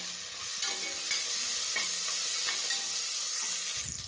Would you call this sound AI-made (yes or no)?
no